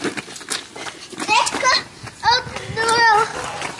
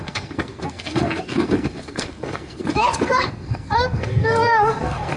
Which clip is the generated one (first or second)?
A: second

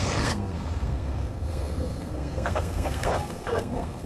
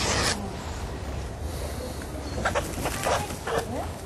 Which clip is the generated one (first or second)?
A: first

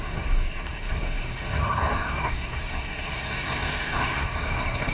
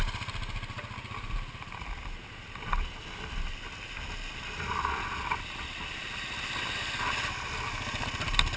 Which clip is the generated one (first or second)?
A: first